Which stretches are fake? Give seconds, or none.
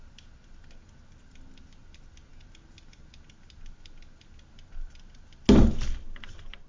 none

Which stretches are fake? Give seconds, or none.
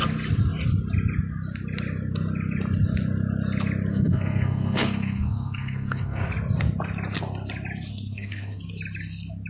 3.9-6.3 (codec, SNAC); 7.9-8.6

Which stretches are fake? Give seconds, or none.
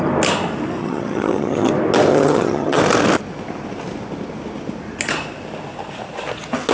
0.8-1.7 (vocoder, HiFi-GAN); 2.1-2.8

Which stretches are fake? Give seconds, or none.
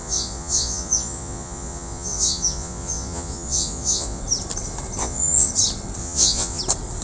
0.0-4.2 (vocoder, Vocos); 5.0-5.5; 6.0-6.6